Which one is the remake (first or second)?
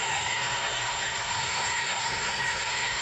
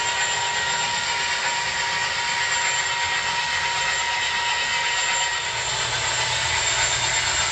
first